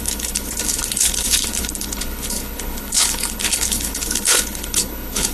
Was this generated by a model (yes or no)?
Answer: yes